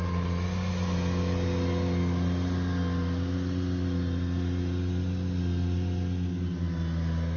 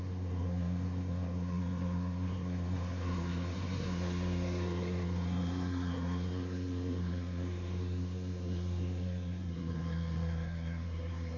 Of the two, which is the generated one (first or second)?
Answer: second